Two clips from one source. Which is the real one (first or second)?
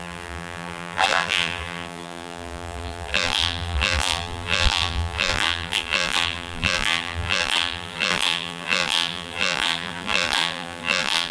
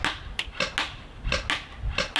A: second